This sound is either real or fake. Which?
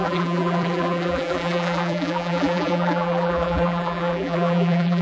fake